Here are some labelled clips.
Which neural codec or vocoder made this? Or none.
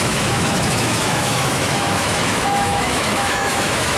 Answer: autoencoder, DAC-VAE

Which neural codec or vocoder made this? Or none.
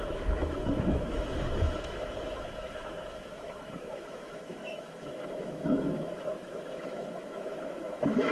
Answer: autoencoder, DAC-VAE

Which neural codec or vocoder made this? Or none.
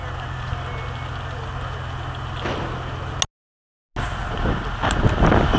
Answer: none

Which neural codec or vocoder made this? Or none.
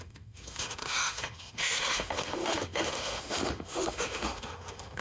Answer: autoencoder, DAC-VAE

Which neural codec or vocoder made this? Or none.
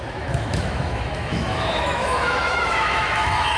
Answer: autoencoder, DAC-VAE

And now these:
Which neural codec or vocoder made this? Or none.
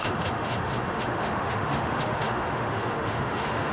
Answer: autoencoder, DAC-VAE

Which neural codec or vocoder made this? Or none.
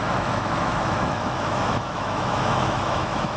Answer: autoencoder, DAC-VAE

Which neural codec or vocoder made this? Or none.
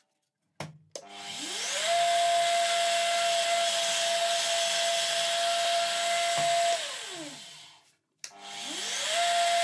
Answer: none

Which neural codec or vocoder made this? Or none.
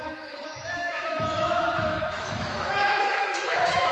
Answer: autoencoder, DAC-VAE